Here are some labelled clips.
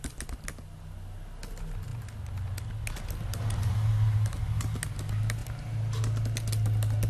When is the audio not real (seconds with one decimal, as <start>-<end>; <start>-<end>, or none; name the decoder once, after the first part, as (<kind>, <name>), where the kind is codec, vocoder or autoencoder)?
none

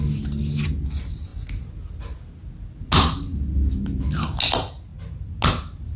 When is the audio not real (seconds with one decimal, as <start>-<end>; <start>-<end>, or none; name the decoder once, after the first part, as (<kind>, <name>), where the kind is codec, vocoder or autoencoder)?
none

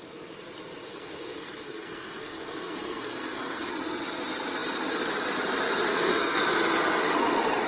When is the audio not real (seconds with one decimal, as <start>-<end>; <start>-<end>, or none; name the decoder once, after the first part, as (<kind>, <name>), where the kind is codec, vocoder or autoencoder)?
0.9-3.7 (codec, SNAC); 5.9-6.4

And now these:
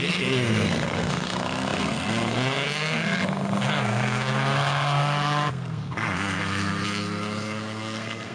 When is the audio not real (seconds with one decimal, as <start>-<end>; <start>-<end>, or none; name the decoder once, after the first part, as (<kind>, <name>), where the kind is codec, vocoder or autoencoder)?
0.0-8.3 (codec, SNAC)

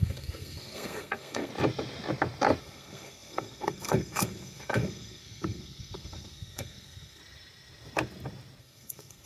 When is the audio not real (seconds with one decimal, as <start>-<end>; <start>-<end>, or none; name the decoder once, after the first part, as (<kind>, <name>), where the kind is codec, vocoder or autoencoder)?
0.0-1.5 (codec, SNAC); 2.6-7.2; 8.6-9.3